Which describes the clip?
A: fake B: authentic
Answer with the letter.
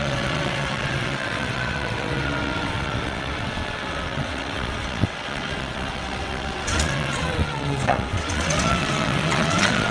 A